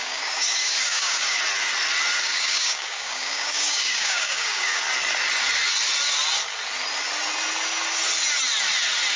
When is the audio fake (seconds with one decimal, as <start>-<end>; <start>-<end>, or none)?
0.0-1.4; 2.2-4.8